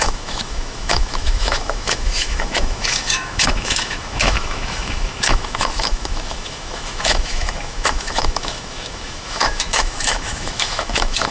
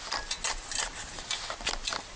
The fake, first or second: first